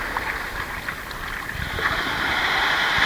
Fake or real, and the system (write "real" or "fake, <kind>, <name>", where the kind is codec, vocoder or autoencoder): real